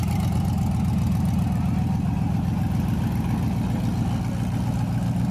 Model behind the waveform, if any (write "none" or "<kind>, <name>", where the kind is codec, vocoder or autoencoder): none